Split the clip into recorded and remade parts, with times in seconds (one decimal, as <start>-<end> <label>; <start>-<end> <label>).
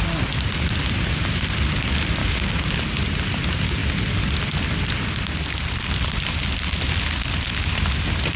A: 0.0-2.2 recorded; 2.2-2.8 remade; 2.8-8.4 recorded